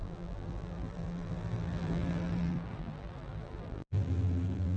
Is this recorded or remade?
remade